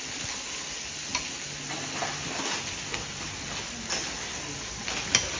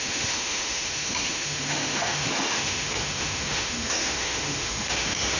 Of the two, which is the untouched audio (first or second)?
first